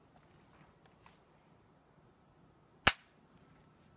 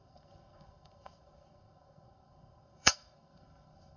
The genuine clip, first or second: first